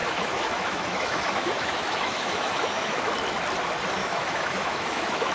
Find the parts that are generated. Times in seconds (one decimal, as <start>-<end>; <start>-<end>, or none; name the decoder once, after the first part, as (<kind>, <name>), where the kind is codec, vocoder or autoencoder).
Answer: 0.0-3.1 (autoencoder, DAC-VAE); 4.0-5.3